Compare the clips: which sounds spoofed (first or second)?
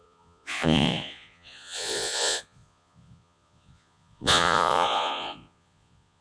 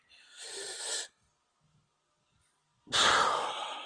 first